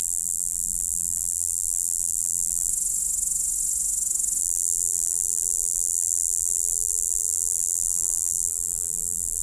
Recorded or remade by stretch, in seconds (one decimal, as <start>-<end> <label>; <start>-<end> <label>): 0.0-2.7 remade; 2.7-4.4 recorded; 4.4-9.4 remade